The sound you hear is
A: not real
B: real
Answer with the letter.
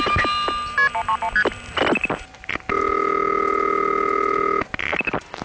B